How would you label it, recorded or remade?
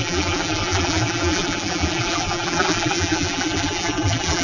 remade